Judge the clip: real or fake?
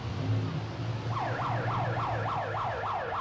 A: real